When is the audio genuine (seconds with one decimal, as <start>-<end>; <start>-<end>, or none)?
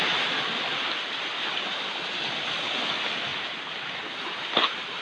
0.0-5.0